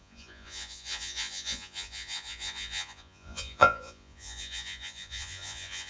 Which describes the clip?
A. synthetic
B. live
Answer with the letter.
A